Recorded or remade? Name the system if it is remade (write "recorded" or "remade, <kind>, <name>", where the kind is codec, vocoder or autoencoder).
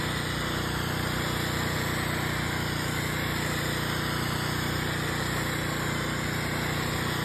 recorded